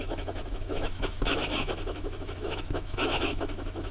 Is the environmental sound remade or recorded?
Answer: remade